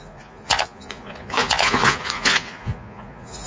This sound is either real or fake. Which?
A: fake